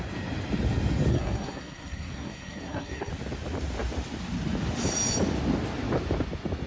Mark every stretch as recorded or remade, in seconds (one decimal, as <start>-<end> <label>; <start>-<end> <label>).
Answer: 0.0-1.1 recorded; 1.1-3.1 remade; 3.1-6.7 recorded